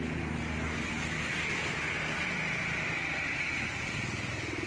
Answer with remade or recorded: recorded